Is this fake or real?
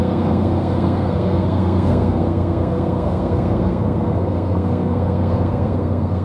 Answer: fake